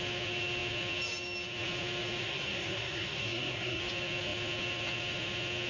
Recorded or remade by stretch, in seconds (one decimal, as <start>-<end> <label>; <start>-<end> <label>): 0.0-2.2 recorded; 2.2-3.8 remade; 3.8-5.7 recorded